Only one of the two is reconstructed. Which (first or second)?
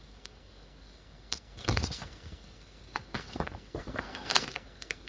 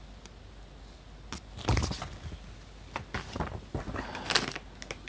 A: first